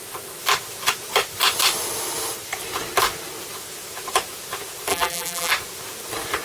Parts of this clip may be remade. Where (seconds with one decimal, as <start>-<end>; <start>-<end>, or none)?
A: 4.9-5.5